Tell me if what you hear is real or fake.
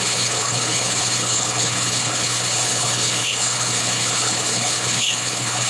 fake